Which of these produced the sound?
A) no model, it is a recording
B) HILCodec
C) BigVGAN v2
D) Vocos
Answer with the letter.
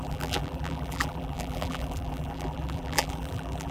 C